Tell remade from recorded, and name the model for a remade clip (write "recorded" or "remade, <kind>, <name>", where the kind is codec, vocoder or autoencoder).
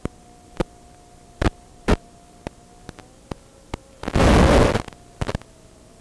recorded